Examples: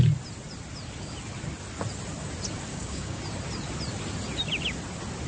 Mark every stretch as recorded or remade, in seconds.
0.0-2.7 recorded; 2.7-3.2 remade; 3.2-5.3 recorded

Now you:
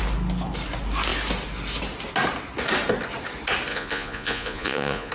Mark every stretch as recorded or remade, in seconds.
0.0-3.7 recorded; 3.7-5.1 remade

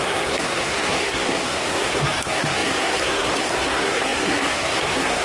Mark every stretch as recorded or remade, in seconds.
0.0-5.2 remade

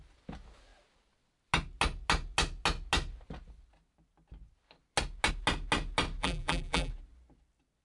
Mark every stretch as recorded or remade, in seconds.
0.0-6.2 recorded; 6.2-6.9 remade; 6.9-7.8 recorded

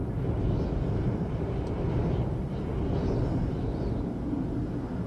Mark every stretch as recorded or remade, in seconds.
0.0-5.1 recorded

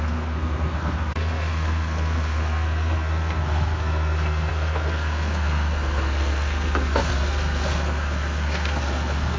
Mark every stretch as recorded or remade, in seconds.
0.0-9.4 remade